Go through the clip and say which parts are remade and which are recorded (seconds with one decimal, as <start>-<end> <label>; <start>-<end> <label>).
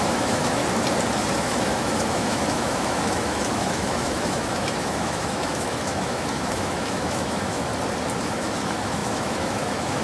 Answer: 0.0-0.6 remade; 0.6-1.2 recorded; 1.2-7.7 remade; 7.7-8.2 recorded; 8.2-10.0 remade